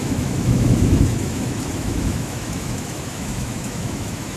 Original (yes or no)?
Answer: no